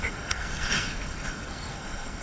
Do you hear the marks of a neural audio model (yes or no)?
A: yes